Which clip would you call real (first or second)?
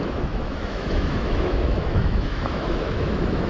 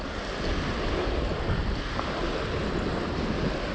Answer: second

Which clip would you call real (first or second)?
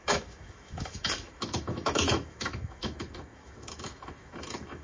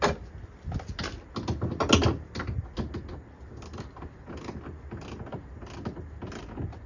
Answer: second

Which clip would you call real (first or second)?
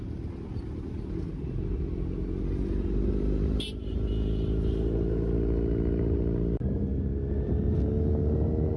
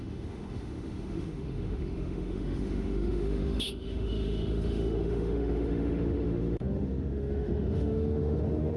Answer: first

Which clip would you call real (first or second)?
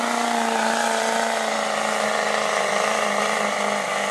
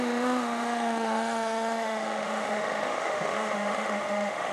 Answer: first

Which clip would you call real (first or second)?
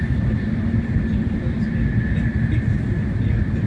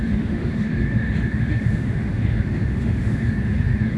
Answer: first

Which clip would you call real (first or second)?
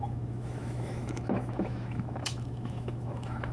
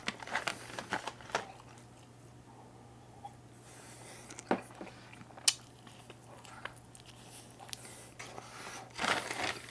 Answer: second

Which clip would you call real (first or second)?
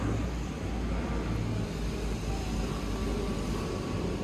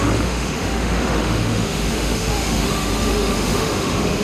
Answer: first